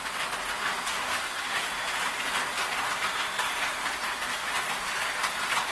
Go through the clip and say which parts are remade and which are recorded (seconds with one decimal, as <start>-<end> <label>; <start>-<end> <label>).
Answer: 0.0-0.9 recorded; 0.9-1.7 remade; 1.7-5.7 recorded